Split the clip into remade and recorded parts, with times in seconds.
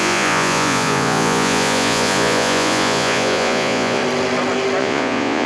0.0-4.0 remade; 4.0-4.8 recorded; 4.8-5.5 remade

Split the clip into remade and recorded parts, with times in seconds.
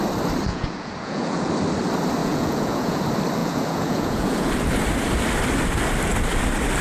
0.0-0.5 recorded; 0.5-1.5 remade; 1.5-2.2 recorded; 2.2-3.0 remade; 3.0-3.4 recorded; 3.4-4.5 remade; 4.5-6.8 recorded